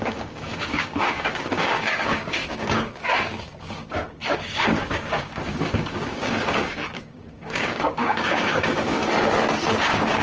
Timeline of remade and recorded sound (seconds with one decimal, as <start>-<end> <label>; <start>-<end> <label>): 0.0-9.0 remade; 9.0-9.7 recorded; 9.7-10.2 remade